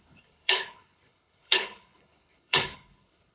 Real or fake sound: fake